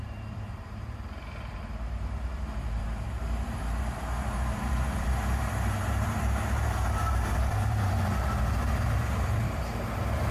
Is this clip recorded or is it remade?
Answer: remade